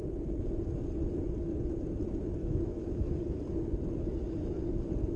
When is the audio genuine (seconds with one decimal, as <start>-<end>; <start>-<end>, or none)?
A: 0.0-2.4; 3.1-5.2